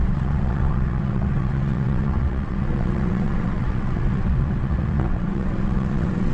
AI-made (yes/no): yes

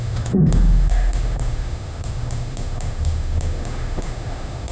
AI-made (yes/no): yes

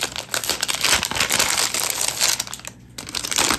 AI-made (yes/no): no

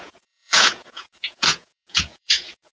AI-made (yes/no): yes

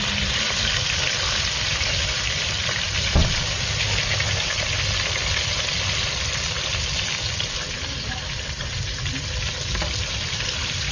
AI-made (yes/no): no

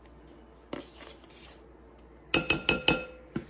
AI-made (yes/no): no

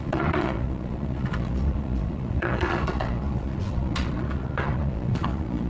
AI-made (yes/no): yes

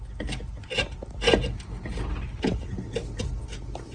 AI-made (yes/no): no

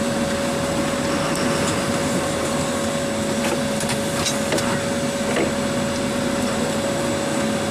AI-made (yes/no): no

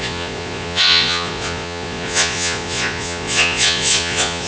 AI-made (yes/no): yes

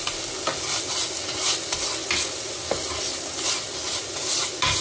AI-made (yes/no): no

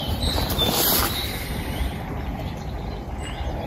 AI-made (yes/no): no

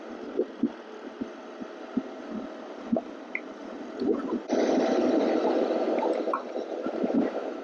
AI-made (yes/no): no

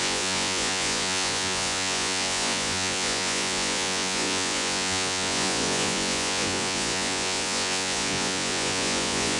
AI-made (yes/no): yes